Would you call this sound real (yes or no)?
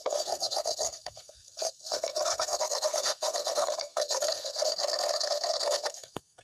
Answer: no